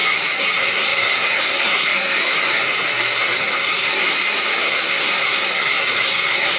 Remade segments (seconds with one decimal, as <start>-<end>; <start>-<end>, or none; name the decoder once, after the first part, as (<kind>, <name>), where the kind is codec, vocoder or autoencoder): 0.0-6.6 (codec, SNAC)